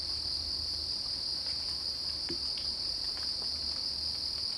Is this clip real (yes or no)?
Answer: yes